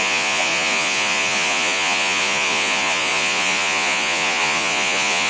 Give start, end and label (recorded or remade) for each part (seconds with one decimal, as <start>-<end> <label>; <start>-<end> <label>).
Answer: 0.0-5.3 remade